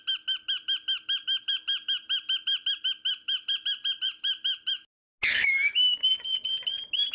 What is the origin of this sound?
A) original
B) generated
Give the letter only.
A